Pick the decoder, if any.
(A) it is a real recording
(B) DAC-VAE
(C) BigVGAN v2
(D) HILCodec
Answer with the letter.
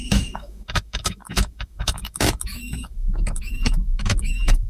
B